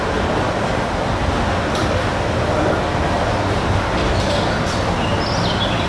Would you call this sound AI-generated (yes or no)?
no